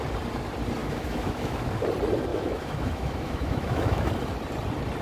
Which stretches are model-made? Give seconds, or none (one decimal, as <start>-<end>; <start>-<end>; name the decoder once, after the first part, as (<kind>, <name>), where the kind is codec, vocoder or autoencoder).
0.8-1.7 (autoencoder, DAC-VAE); 2.3-4.1